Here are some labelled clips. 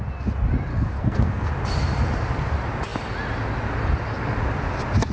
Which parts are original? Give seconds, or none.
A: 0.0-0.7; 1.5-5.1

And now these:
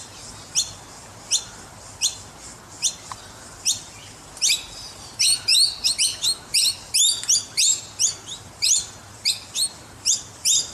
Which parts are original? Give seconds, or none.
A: 0.0-10.7

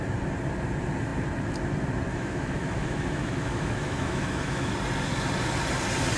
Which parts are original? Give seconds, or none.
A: 0.0-2.1; 4.7-6.2

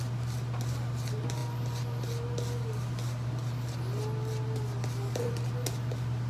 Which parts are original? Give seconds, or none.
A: 0.0-6.3

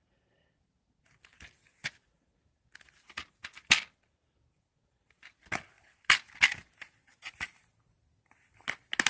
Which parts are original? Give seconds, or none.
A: 0.0-9.1